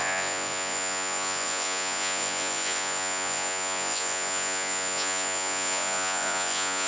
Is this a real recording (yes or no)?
no